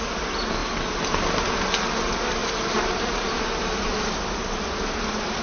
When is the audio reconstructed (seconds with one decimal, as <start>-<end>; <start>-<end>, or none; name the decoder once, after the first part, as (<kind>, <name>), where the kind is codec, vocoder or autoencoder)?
2.4-4.2 (vocoder, BigVGAN v2)